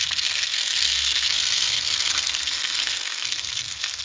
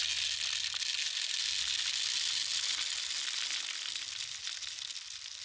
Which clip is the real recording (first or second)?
second